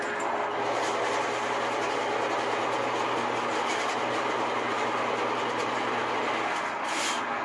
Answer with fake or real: real